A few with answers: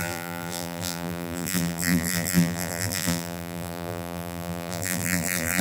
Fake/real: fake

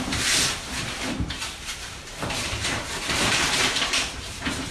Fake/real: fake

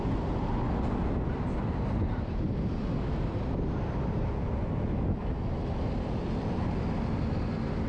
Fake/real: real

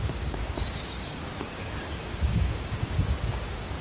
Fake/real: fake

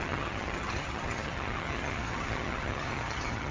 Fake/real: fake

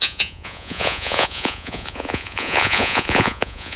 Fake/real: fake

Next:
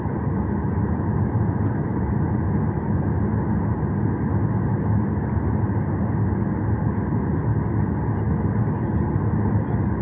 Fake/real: real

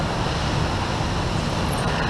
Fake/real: real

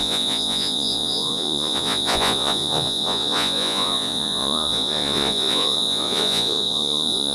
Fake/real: fake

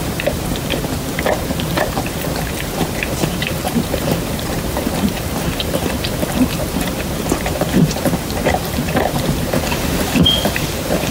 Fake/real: fake